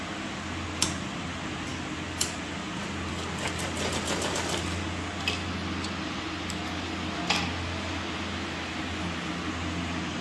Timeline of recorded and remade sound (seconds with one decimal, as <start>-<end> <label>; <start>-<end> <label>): 0.0-10.2 recorded